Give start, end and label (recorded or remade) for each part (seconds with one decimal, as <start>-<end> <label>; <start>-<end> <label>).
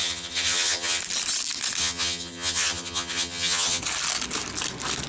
0.0-1.0 remade; 1.0-1.8 recorded; 1.8-3.8 remade; 3.8-5.1 recorded